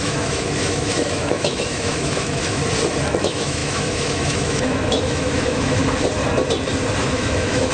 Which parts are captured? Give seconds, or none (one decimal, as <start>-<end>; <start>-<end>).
2.6-3.2; 5.8-7.0